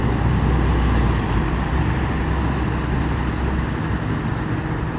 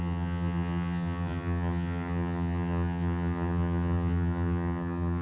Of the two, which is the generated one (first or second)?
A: second